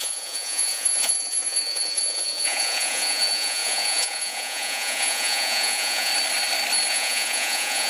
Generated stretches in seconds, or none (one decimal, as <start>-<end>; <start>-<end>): 0.0-6.1; 6.9-7.9